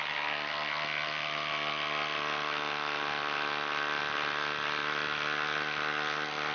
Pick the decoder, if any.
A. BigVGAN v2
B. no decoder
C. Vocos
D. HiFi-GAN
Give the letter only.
B